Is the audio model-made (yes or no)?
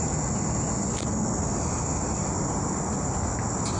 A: no